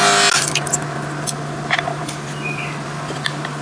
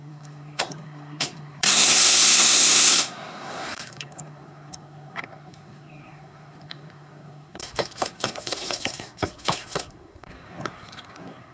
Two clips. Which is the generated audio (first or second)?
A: second